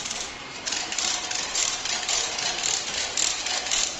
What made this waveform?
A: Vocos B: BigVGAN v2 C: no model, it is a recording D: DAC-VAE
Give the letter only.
B